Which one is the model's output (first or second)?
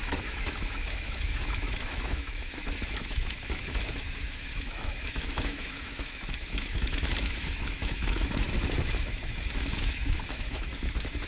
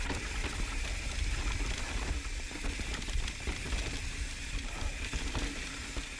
first